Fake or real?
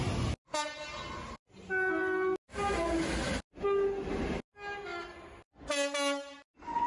real